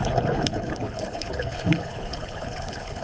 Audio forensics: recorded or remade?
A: remade